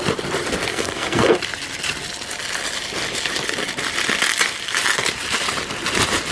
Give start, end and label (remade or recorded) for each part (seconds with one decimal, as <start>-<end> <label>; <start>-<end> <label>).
0.0-0.7 recorded; 0.7-1.4 remade; 1.4-6.3 recorded